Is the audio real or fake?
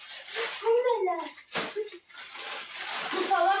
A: real